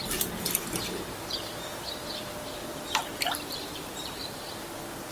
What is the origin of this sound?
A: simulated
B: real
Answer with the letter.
A